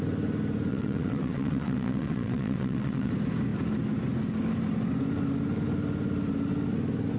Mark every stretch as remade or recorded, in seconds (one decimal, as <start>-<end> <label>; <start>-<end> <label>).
0.0-0.7 recorded; 0.7-3.1 remade; 3.1-7.2 recorded